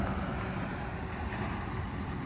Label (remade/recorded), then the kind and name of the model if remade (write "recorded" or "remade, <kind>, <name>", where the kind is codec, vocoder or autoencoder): recorded